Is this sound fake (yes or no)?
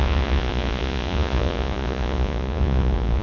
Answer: yes